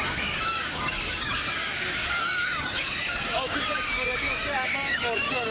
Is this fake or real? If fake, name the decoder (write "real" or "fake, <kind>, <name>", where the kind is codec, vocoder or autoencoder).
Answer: fake, codec, DAC